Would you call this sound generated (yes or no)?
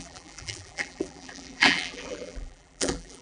yes